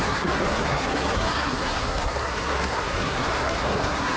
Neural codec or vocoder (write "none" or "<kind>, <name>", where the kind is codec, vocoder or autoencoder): codec, SNAC